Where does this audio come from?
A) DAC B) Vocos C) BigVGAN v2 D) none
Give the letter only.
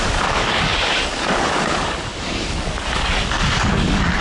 A